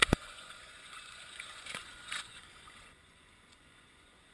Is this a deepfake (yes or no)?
yes